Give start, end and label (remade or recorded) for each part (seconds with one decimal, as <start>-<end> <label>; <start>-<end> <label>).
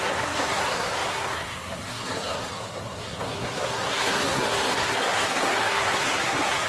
0.0-6.7 remade